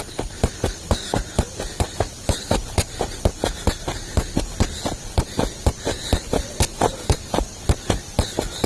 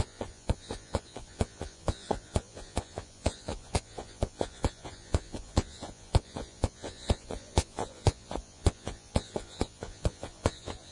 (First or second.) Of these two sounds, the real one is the first